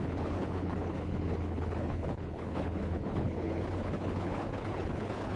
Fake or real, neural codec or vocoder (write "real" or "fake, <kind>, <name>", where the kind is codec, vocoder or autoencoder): fake, codec, HILCodec